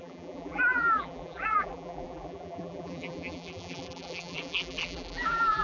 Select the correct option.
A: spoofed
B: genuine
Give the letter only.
A